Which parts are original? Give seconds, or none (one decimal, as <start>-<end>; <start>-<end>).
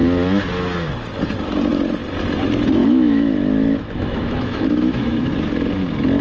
0.0-2.8; 5.2-6.2